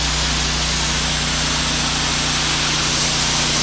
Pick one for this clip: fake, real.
real